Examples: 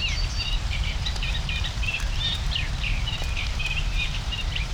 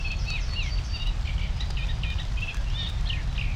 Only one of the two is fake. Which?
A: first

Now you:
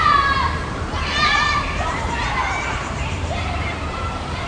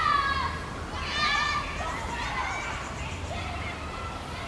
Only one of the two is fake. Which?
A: first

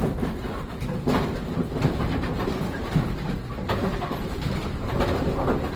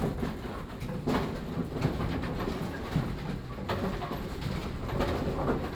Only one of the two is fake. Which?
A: first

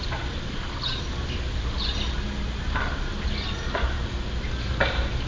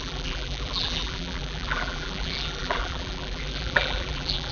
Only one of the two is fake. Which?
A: second